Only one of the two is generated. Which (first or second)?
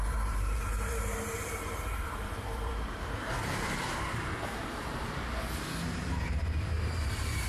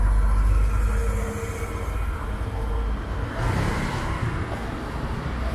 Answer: first